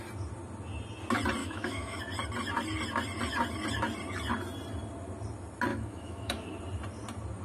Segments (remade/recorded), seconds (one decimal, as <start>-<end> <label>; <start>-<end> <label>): 0.0-1.4 recorded; 1.4-2.0 remade; 2.0-5.7 recorded; 5.7-6.6 remade; 6.6-7.4 recorded